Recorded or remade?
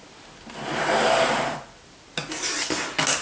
recorded